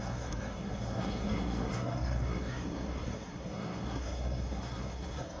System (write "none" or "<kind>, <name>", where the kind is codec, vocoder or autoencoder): codec, SNAC